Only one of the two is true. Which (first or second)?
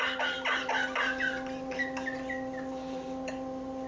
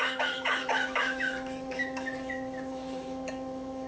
first